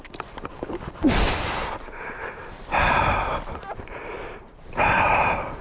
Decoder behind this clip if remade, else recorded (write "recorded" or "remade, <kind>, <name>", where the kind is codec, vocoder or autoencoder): remade, vocoder, BigVGAN v2